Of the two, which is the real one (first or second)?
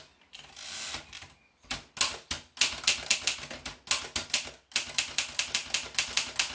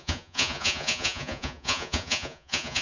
first